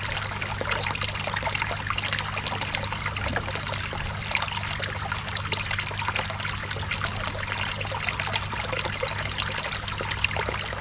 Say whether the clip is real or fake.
real